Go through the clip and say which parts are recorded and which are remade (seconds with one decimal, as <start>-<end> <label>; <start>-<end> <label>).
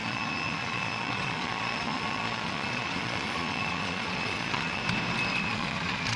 0.0-4.8 remade; 4.8-5.4 recorded; 5.4-6.2 remade